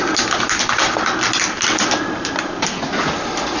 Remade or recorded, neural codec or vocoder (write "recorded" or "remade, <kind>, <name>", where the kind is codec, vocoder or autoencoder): recorded